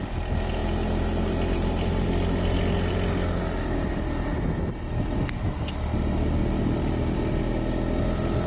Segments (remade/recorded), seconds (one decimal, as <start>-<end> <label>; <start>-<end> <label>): 0.0-8.5 recorded